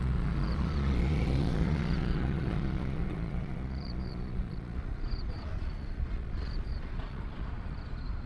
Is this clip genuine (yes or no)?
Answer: no